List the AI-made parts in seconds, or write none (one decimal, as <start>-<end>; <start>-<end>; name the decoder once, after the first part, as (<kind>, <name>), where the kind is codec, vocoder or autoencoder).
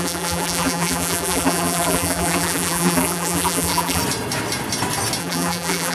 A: 0.0-4.0 (vocoder, BigVGAN v2); 5.2-5.9